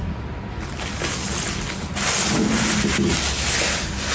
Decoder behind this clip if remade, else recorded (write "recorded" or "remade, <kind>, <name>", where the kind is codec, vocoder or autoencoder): recorded